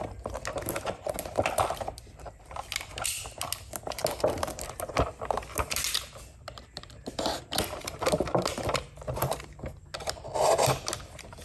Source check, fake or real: real